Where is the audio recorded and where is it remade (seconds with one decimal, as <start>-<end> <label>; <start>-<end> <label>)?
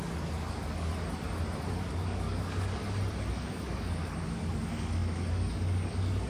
0.0-0.9 remade; 0.9-1.7 recorded; 1.7-2.8 remade; 2.8-3.3 recorded; 3.3-6.3 remade